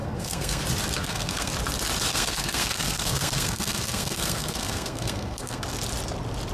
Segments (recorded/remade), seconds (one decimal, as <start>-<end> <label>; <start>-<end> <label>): 0.0-0.6 remade; 0.6-1.0 recorded; 1.0-1.5 remade; 1.5-2.1 recorded; 2.1-5.6 remade; 5.6-6.5 recorded